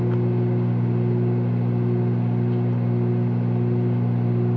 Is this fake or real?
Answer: real